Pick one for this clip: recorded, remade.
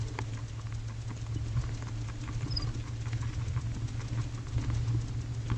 recorded